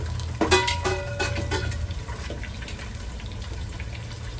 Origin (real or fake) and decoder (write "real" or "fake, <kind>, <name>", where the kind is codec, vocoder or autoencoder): real